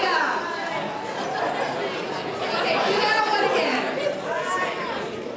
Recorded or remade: recorded